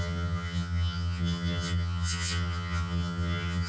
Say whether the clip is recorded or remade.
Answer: remade